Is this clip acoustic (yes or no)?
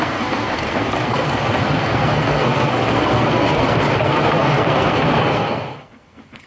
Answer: no